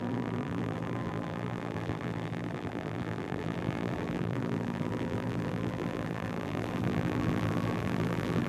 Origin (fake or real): fake